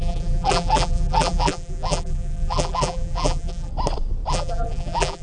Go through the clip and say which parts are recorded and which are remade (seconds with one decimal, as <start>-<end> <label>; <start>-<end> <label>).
0.0-3.7 remade; 3.7-4.3 recorded; 4.3-5.2 remade